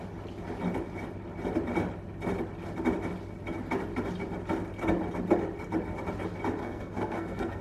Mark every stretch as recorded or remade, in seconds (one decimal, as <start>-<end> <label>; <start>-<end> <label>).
0.0-6.6 recorded; 6.6-7.6 remade